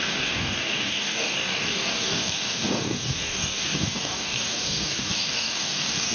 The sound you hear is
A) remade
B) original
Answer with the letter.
A